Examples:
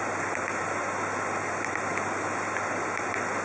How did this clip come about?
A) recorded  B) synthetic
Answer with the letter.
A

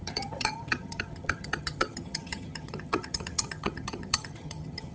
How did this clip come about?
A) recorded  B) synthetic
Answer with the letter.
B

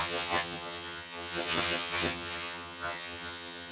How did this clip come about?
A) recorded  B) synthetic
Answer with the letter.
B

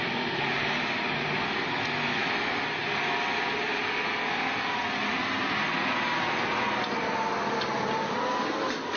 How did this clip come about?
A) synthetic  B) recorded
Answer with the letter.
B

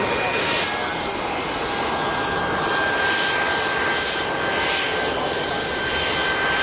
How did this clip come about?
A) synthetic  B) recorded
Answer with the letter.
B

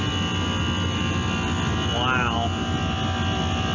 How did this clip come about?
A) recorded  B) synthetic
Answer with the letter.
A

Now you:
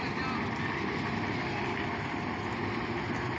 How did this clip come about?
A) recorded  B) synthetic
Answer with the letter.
A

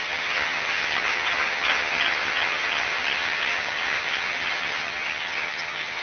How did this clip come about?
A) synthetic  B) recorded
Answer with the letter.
A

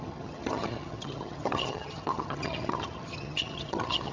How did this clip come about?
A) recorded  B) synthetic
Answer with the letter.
B